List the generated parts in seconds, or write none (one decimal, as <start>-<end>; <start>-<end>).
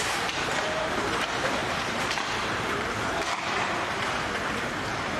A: 0.0-5.2